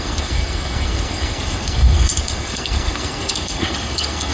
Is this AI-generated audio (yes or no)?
yes